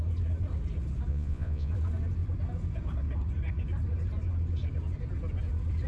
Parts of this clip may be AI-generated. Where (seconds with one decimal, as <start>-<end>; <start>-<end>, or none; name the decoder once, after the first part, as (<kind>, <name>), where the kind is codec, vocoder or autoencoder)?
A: 1.1-1.7 (vocoder, Vocos)